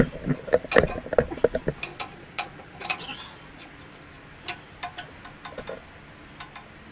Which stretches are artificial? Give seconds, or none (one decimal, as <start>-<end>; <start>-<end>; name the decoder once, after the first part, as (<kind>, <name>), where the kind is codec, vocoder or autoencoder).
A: 1.9-3.7 (vocoder, Vocos)